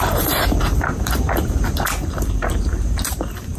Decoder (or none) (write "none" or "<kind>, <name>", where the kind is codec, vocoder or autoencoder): vocoder, BigVGAN v2